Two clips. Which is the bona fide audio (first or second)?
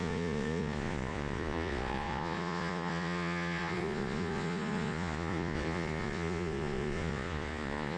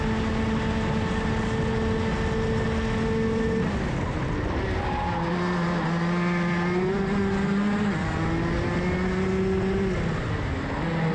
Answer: second